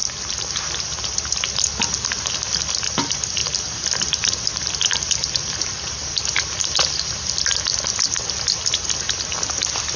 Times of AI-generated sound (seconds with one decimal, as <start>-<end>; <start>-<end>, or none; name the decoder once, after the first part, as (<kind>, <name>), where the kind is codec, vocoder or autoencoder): 0.0-0.5 (vocoder, BigVGAN v2); 3.4-5.1